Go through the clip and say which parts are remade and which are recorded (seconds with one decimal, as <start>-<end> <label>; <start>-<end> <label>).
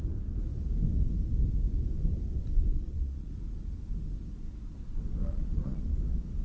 0.0-2.7 recorded; 2.7-3.3 remade; 3.3-5.2 recorded; 5.2-5.9 remade; 5.9-6.4 recorded